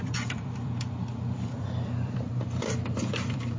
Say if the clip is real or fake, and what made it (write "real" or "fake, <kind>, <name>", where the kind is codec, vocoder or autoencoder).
fake, vocoder, BigVGAN v2